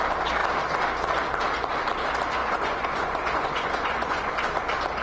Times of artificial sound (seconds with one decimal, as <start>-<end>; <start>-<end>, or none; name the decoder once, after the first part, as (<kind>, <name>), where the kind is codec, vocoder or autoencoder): 2.4-4.3 (vocoder, Vocos)